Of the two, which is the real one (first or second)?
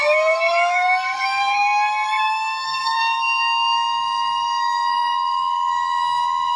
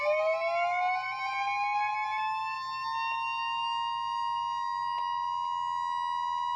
second